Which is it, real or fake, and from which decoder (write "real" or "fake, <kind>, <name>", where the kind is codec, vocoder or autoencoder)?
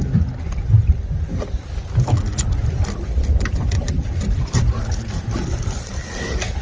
real